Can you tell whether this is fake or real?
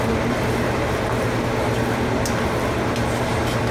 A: real